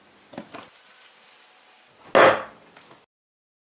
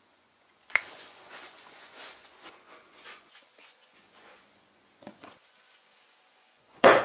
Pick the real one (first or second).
first